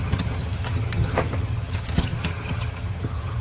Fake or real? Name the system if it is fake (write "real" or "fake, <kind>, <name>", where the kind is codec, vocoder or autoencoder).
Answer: fake, vocoder, HiFi-GAN